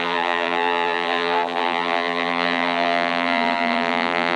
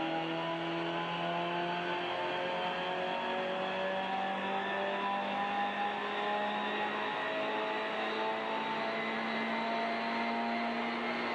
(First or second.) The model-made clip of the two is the first